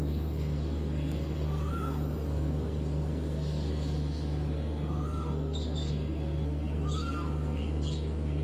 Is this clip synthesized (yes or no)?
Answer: yes